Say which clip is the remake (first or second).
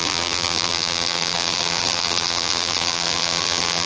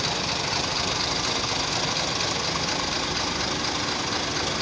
first